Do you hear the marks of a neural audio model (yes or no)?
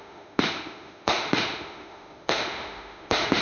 yes